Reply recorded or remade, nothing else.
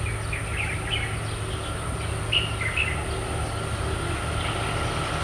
recorded